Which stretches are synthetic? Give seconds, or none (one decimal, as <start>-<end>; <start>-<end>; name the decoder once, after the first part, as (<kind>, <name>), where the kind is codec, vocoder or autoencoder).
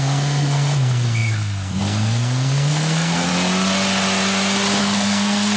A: 0.0-3.3 (codec, SNAC); 4.8-5.6